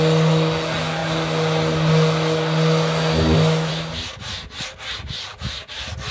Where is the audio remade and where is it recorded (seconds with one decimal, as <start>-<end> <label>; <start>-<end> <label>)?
0.0-6.1 recorded